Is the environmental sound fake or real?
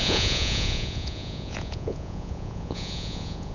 fake